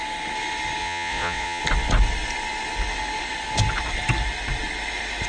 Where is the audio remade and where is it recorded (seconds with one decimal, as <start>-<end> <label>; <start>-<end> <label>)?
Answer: 0.0-0.8 recorded; 0.8-1.6 remade; 1.6-5.3 recorded